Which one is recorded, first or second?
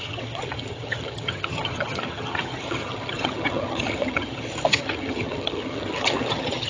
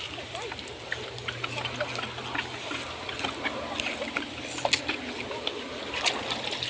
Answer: second